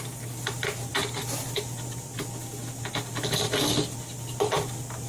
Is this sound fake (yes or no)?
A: no